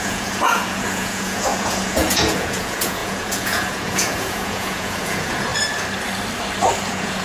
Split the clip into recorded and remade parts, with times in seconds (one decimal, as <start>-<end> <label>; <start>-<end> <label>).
0.0-5.5 remade; 5.5-6.8 recorded; 6.8-7.2 remade